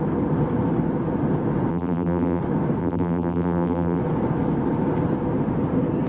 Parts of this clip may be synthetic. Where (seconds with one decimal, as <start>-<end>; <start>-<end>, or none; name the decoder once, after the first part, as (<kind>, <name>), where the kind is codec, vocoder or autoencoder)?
1.7-2.4 (vocoder, BigVGAN v2); 2.8-4.0